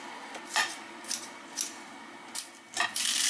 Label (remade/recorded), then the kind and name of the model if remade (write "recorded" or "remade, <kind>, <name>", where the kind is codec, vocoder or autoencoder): recorded